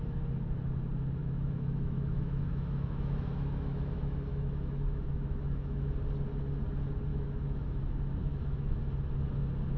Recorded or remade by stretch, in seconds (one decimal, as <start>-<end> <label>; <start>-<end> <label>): 0.0-1.2 recorded; 1.2-5.9 remade; 5.9-7.1 recorded; 7.1-7.8 remade; 7.8-8.2 recorded; 8.2-8.8 remade; 8.8-9.8 recorded